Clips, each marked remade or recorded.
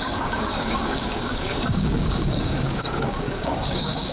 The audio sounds remade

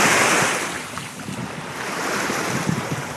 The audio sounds recorded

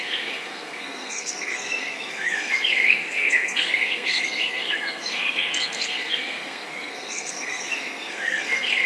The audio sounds remade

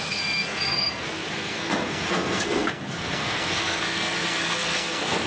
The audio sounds remade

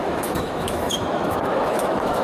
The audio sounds remade